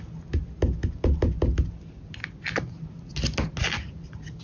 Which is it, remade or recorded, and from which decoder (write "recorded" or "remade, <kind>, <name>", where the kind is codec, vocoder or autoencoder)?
recorded